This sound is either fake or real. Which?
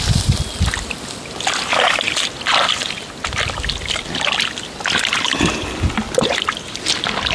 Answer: real